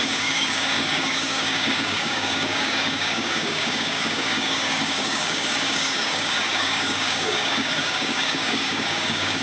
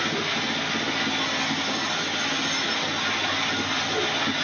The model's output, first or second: first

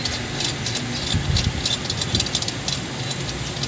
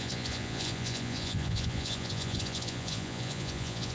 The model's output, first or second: second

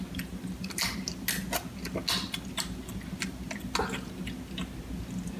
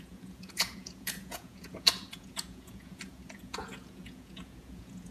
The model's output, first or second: second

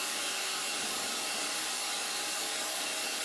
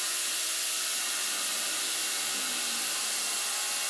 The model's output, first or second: first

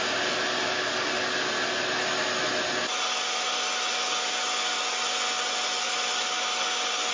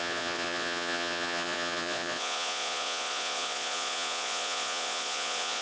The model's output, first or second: second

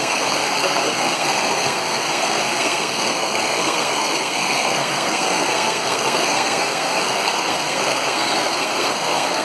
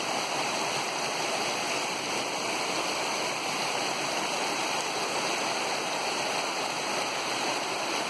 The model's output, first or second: first